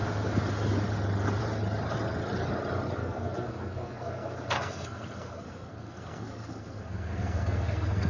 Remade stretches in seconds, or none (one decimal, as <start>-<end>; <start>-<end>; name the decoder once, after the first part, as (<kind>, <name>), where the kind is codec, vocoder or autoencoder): 3.0-8.1 (codec, SNAC)